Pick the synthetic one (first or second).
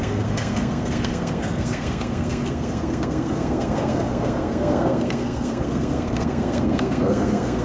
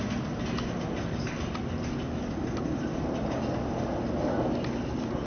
first